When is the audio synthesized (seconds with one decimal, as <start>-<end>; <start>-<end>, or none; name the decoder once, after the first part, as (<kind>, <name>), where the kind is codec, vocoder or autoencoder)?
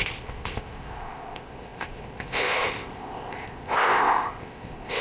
0.0-5.0 (codec, ZipCodec)